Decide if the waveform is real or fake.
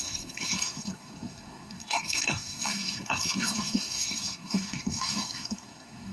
fake